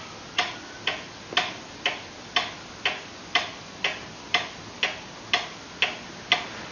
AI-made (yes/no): no